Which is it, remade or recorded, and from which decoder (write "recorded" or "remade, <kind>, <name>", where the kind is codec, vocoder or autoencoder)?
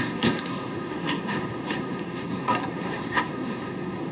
remade, codec, SNAC